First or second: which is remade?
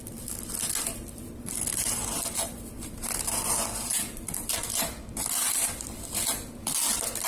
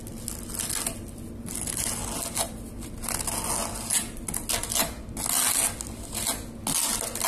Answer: first